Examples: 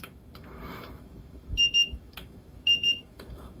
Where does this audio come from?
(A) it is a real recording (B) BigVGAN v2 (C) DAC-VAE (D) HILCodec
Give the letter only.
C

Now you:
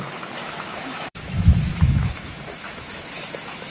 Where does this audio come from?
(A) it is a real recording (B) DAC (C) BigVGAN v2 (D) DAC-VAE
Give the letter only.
D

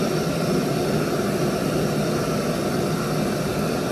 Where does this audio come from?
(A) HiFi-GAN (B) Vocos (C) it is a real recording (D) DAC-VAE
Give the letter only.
C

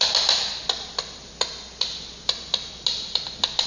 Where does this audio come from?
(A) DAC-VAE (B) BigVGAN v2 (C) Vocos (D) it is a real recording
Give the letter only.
D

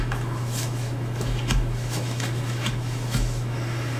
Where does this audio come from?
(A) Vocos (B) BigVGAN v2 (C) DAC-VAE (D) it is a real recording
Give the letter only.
C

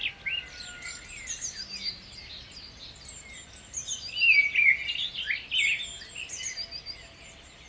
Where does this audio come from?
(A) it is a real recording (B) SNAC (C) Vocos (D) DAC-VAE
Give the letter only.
A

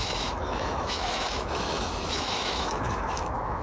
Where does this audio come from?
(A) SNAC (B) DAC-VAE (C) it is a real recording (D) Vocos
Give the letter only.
B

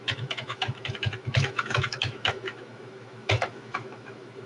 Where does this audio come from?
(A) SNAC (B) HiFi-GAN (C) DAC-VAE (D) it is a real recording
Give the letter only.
C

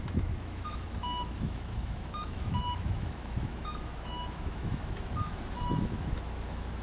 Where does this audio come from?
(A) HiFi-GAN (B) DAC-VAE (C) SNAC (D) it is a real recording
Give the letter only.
B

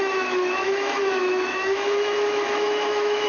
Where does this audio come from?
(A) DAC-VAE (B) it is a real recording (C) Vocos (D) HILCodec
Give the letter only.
A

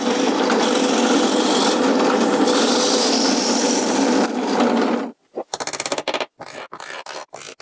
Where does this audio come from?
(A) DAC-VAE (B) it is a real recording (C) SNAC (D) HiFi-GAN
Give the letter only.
B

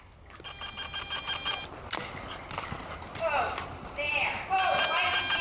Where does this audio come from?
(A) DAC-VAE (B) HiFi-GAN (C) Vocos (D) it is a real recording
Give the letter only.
D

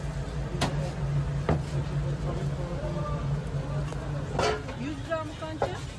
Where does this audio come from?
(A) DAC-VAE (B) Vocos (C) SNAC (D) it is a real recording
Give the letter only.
D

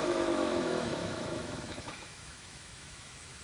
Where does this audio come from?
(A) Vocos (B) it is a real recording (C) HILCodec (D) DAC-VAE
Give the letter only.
D